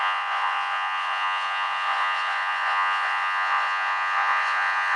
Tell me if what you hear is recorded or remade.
remade